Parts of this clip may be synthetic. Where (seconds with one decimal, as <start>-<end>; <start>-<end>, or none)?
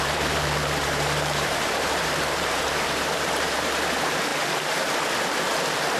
0.0-4.3